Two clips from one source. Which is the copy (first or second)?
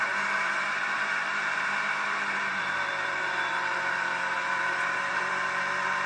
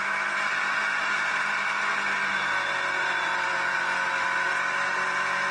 first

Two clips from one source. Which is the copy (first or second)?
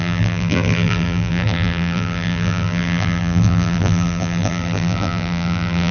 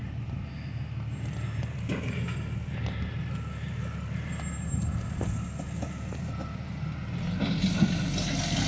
first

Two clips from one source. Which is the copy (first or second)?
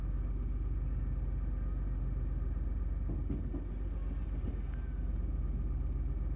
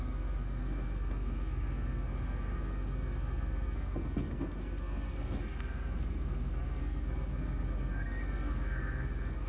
second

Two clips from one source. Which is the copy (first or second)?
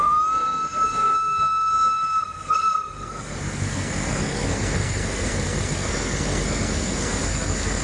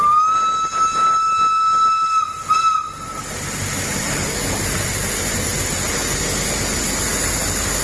first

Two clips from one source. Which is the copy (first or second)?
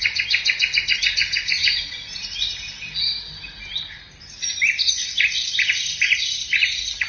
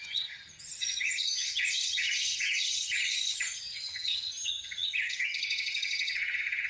second